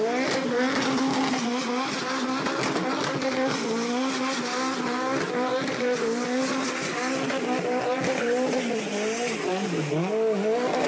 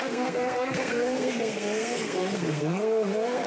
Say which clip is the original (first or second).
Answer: first